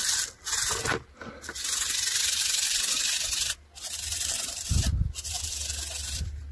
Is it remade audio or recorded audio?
recorded